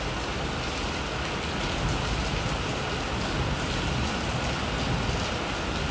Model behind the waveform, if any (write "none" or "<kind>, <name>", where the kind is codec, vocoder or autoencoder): none